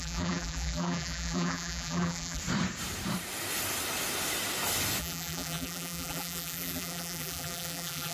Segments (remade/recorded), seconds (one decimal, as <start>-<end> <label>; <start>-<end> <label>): 0.0-2.4 remade; 2.4-5.0 recorded; 5.0-8.1 remade